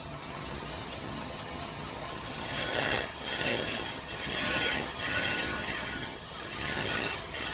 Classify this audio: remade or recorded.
remade